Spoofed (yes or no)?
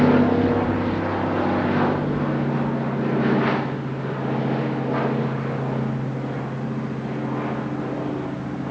no